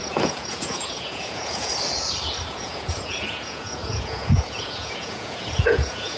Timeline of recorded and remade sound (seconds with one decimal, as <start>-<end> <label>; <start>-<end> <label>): 0.0-1.7 remade; 1.7-2.6 recorded; 2.6-6.2 remade